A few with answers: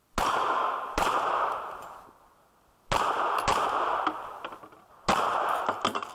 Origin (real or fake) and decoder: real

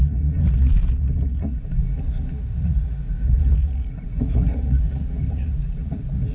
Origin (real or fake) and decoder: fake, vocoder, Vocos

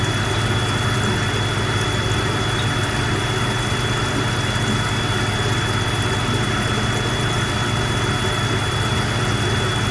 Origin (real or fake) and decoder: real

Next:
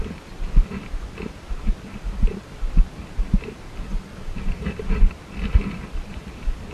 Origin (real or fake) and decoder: real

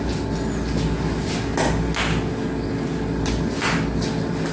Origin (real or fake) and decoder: real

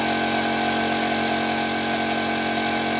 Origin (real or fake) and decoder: real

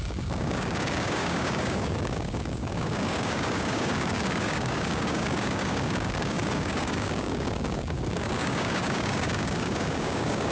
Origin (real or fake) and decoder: fake, codec, DAC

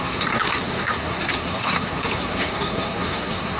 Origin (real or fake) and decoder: fake, codec, SNAC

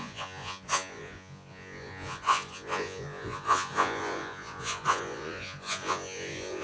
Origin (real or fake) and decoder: fake, vocoder, Vocos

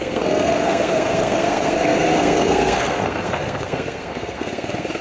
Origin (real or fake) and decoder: fake, codec, SNAC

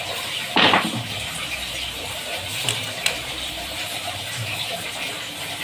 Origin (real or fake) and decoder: fake, vocoder, BigVGAN v2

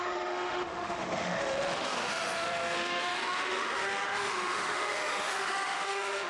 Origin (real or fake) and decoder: fake, autoencoder, DAC-VAE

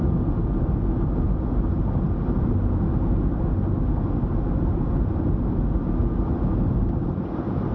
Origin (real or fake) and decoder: real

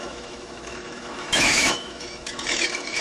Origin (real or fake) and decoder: fake, autoencoder, DAC-VAE